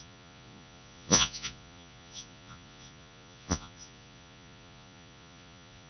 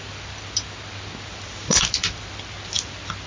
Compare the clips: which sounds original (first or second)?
second